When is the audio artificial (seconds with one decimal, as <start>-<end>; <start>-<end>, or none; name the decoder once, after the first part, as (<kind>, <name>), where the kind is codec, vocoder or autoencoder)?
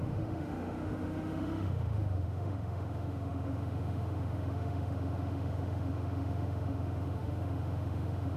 0.0-8.4 (autoencoder, DAC-VAE)